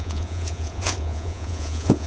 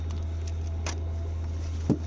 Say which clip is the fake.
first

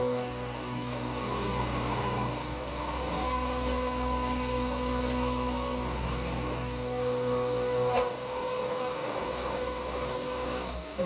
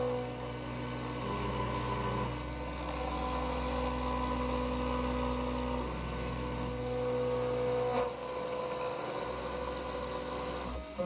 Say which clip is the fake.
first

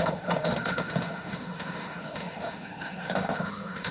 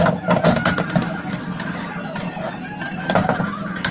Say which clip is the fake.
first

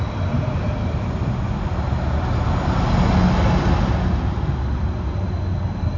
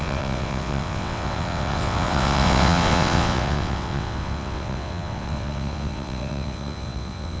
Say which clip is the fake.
second